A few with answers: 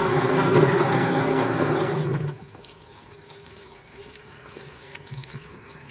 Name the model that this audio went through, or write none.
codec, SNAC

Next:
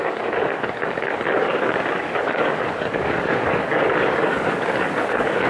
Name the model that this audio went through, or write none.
codec, DAC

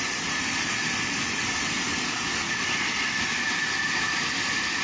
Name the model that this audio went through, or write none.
none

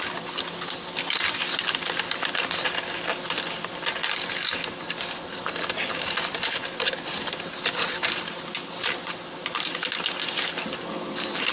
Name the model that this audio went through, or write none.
none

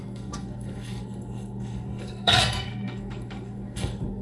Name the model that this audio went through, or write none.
codec, SNAC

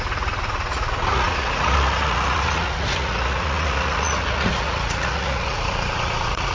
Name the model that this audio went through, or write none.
vocoder, Vocos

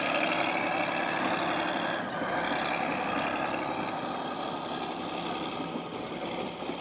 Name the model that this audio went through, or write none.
none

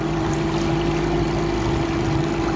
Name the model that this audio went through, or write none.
none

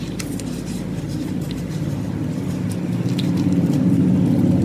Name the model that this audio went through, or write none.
none